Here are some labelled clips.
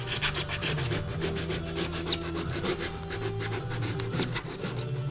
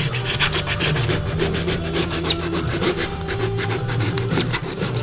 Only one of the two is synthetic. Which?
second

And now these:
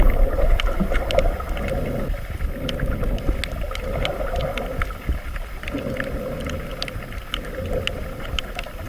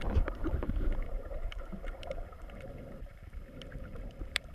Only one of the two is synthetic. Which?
second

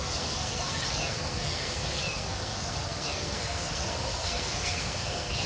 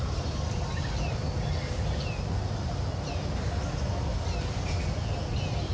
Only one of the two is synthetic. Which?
first